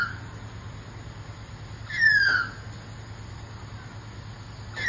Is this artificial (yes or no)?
no